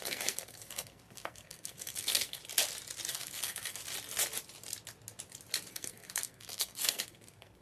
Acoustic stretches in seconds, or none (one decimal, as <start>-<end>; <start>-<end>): 2.4-3.1; 3.8-5.7